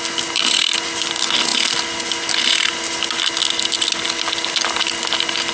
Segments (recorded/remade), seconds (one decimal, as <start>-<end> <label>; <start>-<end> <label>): 0.0-5.5 recorded